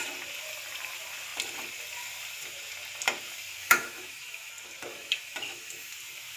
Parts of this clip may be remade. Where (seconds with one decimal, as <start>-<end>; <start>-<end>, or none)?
3.6-4.5; 4.9-5.9